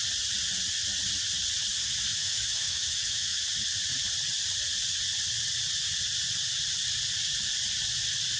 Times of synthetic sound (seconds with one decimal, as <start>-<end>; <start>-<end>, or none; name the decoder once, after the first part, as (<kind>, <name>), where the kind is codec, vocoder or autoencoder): 2.1-3.4 (autoencoder, DAC-VAE)